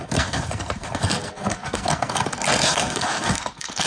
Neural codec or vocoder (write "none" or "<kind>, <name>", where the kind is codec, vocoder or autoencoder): codec, SNAC